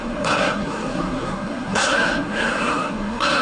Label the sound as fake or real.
fake